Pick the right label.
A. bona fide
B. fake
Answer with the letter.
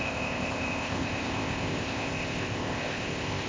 B